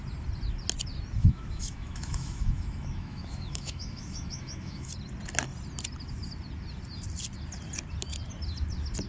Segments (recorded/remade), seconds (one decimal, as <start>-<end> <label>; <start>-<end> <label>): 0.0-1.2 recorded; 1.2-4.9 remade; 4.9-9.1 recorded